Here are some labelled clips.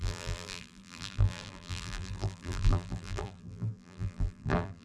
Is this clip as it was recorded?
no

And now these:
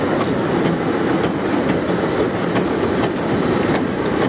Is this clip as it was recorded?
yes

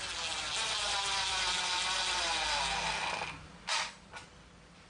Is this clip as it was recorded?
yes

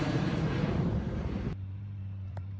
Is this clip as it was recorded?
no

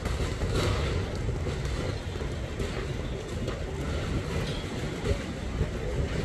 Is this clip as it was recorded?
yes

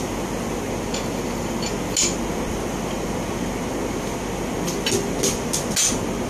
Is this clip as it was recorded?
yes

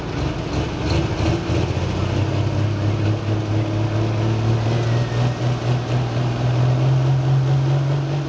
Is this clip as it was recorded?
yes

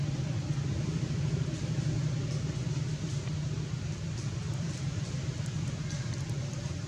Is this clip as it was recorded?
no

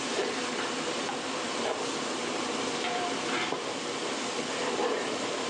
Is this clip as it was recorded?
no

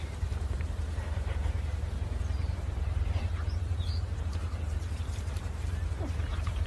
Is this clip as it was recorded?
no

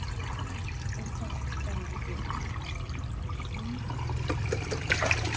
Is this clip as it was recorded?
yes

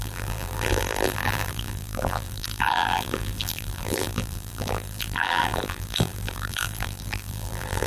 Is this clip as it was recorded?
no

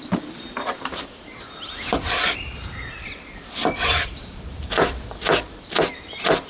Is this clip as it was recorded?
no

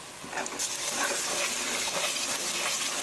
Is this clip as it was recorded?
yes